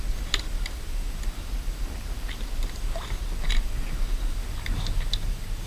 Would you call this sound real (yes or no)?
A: yes